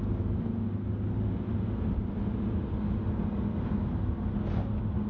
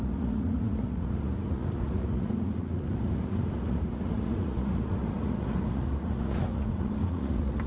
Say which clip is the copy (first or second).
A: second